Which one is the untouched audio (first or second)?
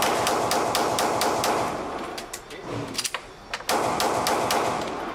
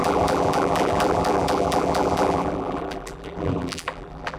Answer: first